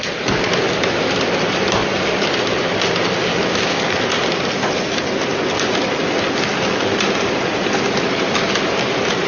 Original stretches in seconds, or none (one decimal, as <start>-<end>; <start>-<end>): 0.0-3.3; 3.9-9.3